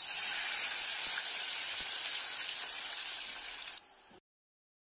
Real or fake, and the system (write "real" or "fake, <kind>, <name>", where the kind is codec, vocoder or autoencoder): fake, vocoder, BigVGAN v2